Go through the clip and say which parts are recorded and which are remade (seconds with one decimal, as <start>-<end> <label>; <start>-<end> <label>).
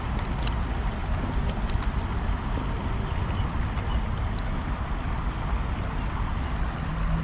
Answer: 0.0-7.2 recorded